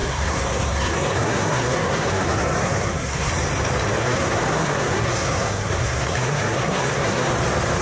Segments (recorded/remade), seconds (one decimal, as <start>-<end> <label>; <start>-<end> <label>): 0.0-3.3 remade; 3.3-4.0 recorded; 4.0-7.3 remade; 7.3-7.8 recorded